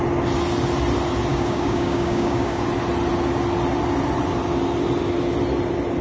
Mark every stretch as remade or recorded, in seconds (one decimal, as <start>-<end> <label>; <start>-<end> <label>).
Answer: 0.0-1.3 recorded; 1.3-2.6 remade; 2.6-6.0 recorded